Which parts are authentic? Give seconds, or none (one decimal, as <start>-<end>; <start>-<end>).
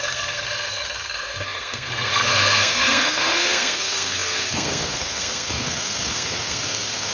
none